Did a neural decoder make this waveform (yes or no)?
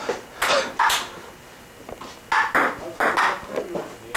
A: no